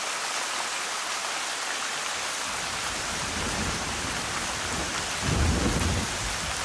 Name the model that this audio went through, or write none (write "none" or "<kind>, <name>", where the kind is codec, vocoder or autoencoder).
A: none